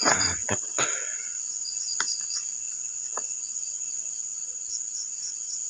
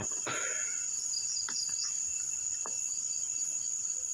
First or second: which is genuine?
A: second